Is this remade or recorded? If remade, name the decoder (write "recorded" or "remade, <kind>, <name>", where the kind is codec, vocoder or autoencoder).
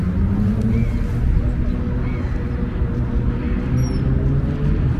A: recorded